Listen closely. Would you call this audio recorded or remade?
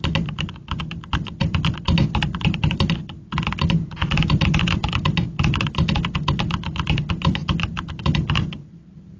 recorded